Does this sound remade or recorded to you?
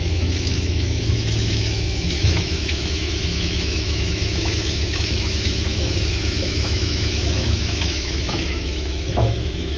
remade